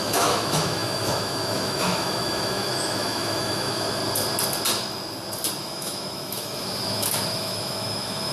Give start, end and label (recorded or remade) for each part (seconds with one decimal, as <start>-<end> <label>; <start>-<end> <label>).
0.0-4.0 remade; 4.0-5.6 recorded; 5.6-8.3 remade